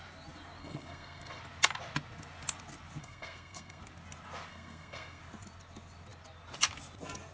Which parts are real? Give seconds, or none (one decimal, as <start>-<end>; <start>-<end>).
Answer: 0.0-0.6; 1.4-3.0; 3.8-4.5; 5.2-7.3